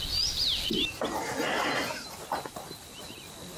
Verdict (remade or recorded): recorded